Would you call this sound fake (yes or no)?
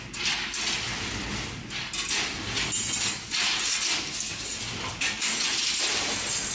no